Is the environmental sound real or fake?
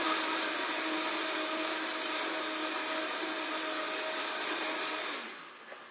real